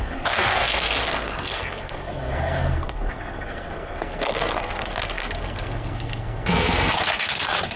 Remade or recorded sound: remade